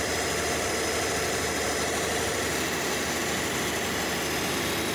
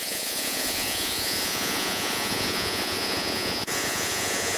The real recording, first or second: first